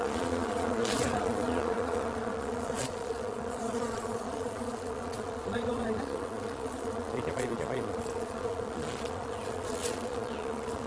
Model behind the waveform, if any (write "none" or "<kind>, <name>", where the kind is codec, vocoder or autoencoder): vocoder, Vocos